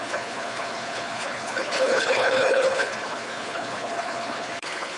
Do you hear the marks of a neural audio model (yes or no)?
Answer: yes